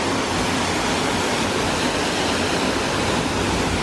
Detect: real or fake real